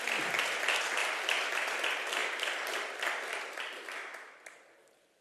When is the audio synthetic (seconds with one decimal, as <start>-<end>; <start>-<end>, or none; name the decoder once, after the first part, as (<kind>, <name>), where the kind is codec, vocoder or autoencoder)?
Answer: none